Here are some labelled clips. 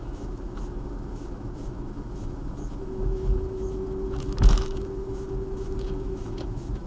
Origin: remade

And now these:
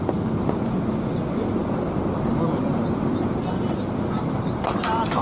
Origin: recorded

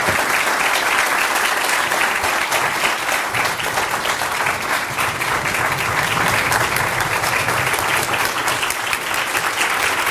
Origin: recorded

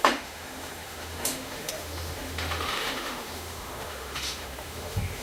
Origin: remade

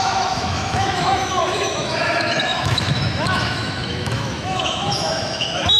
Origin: remade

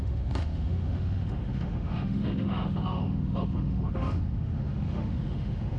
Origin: remade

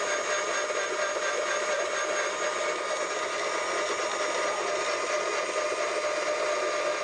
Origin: recorded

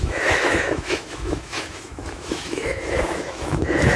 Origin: remade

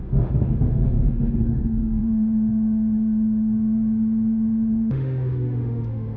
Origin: remade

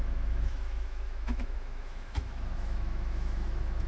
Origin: remade